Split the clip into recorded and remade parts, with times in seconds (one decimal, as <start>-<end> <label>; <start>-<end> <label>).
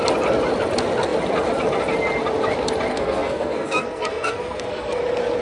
0.0-2.9 recorded; 2.9-5.0 remade; 5.0-5.4 recorded